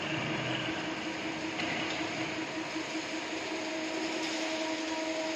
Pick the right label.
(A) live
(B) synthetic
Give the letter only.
A